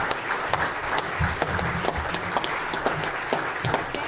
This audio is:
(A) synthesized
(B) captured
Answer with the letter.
B